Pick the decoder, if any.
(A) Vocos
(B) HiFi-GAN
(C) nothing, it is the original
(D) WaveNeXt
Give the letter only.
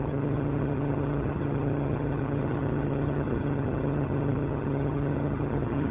B